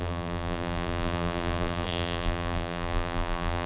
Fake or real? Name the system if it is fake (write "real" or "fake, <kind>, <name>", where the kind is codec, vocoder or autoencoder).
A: fake, vocoder, BigVGAN v2